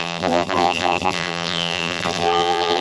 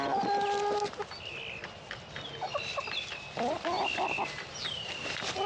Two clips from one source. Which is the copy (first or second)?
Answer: first